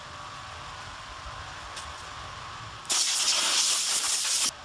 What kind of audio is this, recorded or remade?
recorded